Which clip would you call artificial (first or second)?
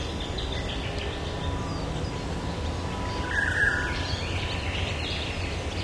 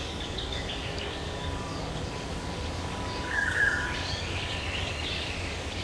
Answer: second